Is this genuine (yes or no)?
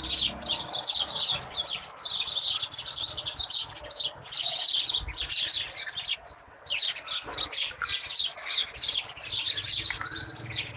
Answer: yes